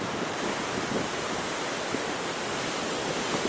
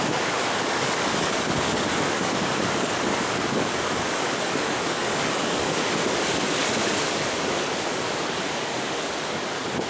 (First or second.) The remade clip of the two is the second